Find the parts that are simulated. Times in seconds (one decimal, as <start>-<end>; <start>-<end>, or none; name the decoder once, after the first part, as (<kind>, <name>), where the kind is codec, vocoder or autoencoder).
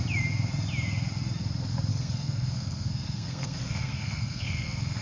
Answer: 1.9-5.0 (codec, SNAC)